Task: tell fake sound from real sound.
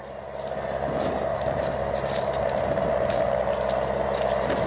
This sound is real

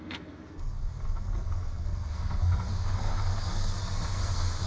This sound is fake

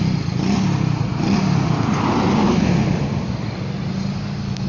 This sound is real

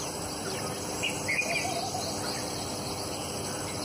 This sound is real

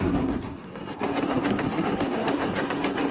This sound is fake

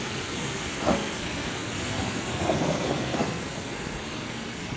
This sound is fake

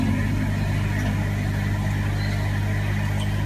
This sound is real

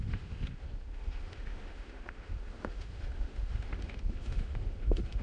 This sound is fake